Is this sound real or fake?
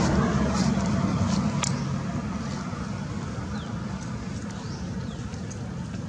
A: real